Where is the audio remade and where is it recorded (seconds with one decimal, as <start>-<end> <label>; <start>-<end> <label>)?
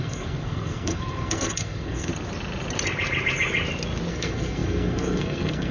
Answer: 0.0-2.1 remade; 2.1-4.1 recorded; 4.1-5.7 remade